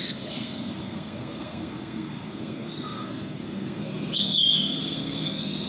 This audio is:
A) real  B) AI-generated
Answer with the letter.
B